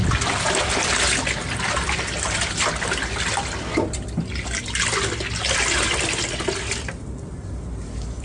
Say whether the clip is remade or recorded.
recorded